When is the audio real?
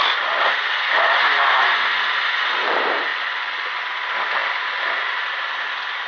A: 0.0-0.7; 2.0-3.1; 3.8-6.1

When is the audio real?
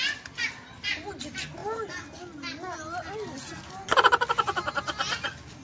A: 0.0-5.6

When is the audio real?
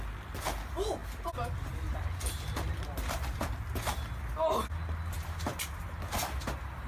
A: 0.0-6.9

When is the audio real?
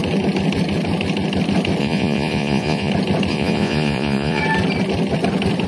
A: 0.0-1.8; 2.9-3.3; 4.4-5.7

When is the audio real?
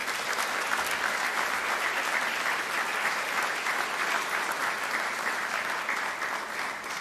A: 0.0-7.0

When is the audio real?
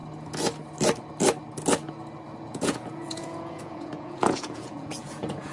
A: 0.0-2.4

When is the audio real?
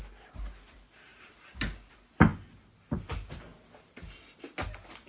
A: 0.0-5.1